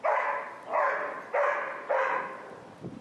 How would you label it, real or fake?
real